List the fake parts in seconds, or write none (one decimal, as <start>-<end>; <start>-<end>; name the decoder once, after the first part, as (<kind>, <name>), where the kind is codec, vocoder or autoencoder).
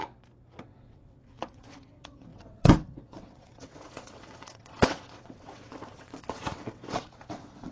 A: 0.6-7.7 (vocoder, WaveNeXt)